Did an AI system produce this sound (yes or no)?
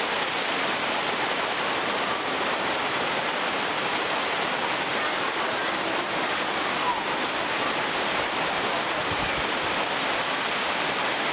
yes